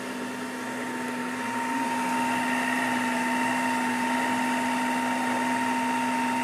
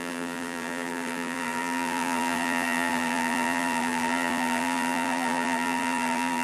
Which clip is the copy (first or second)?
second